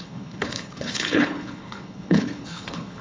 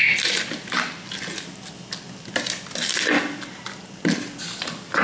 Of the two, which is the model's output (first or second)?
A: first